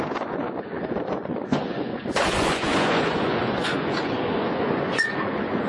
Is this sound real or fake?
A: fake